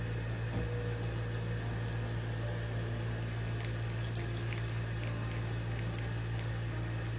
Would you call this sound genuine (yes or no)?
yes